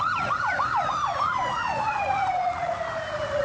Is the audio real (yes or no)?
no